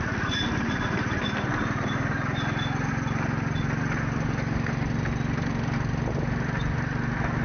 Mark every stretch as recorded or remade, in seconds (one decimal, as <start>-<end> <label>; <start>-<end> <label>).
0.0-7.4 recorded